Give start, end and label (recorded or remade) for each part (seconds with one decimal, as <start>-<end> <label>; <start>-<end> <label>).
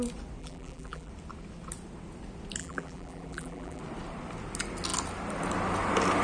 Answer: 0.0-0.4 recorded; 0.4-1.1 remade; 1.1-2.6 recorded; 2.6-3.8 remade; 3.8-6.2 recorded